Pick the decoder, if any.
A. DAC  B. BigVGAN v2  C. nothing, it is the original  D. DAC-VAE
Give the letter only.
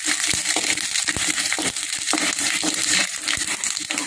C